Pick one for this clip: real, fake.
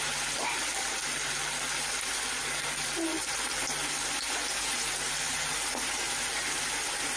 real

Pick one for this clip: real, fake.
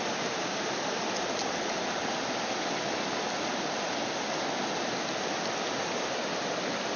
real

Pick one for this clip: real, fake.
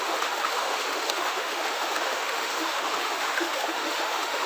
fake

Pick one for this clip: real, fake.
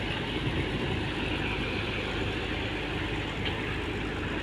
real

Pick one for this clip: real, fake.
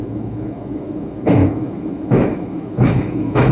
fake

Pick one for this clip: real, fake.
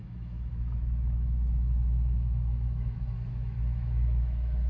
fake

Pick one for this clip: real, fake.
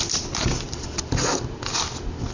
real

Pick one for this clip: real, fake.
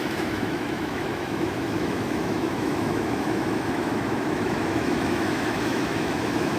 fake